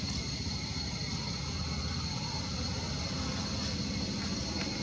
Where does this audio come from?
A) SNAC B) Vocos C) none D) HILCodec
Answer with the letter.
C